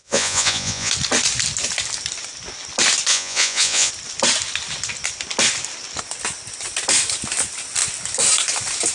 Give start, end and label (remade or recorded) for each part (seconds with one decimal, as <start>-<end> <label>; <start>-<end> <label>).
0.0-0.9 remade; 0.9-3.1 recorded; 3.1-3.9 remade; 3.9-8.9 recorded